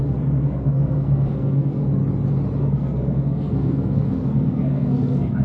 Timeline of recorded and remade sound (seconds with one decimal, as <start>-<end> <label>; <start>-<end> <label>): 0.0-2.0 remade; 2.0-2.6 recorded; 2.6-5.4 remade